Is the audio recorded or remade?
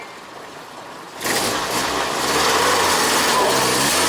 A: recorded